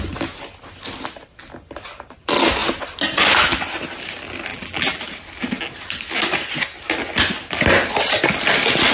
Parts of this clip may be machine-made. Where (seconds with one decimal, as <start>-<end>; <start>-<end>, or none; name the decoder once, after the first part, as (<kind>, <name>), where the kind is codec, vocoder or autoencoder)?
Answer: 4.5-5.0 (vocoder, BigVGAN v2)